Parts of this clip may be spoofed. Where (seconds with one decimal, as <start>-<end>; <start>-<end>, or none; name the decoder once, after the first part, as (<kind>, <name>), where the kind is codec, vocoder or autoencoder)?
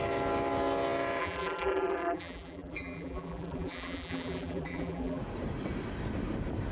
1.2-5.2 (vocoder, BigVGAN v2)